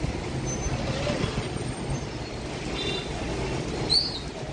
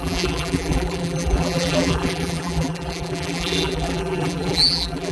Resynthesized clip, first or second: second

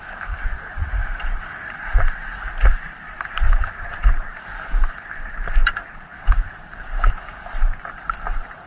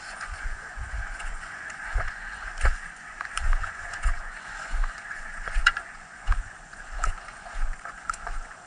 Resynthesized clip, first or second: second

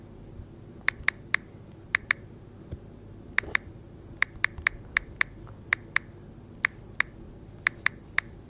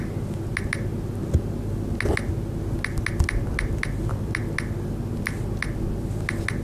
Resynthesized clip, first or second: first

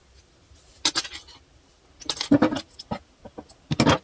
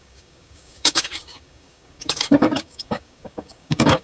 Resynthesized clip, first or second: second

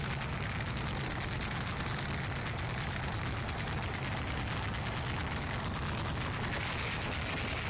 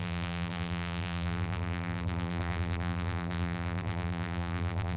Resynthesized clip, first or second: second